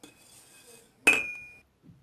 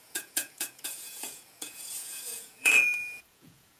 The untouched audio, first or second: first